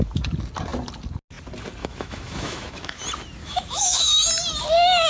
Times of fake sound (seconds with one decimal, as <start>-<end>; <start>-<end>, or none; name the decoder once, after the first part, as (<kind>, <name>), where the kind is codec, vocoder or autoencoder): 1.8-3.0 (autoencoder, DAC-VAE); 3.4-4.3